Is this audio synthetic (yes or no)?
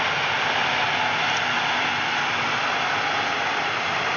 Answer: no